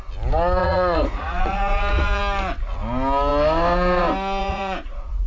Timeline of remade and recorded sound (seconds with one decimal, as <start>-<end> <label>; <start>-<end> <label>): 0.0-0.6 recorded; 0.6-2.2 remade; 2.2-4.4 recorded; 4.4-5.3 remade